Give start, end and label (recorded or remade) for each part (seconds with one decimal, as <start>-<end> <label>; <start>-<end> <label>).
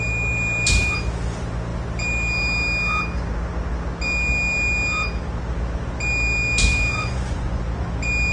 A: 0.0-6.9 recorded; 6.9-7.6 remade; 7.6-8.3 recorded